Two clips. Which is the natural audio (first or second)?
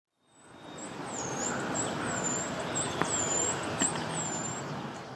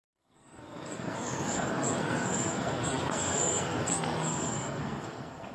first